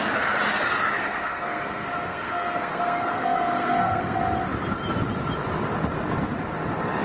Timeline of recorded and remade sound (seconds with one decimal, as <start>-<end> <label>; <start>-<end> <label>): 0.0-1.0 recorded; 1.0-4.2 remade; 4.2-7.0 recorded

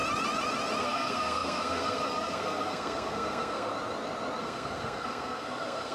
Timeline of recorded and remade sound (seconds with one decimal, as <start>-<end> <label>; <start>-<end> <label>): 0.0-0.8 recorded; 0.8-3.7 remade; 3.7-4.4 recorded; 4.4-5.9 remade

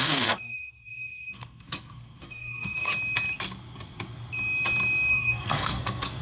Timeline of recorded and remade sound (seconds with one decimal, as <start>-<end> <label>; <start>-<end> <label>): 0.0-2.9 remade; 2.9-5.1 recorded; 5.1-6.2 remade

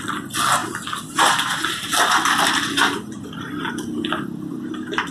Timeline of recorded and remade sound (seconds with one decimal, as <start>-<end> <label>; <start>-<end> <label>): 0.0-5.1 recorded